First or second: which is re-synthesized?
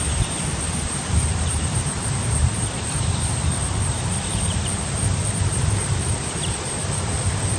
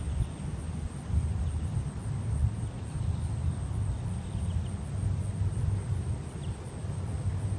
first